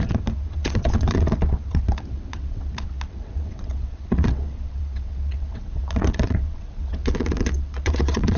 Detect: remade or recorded remade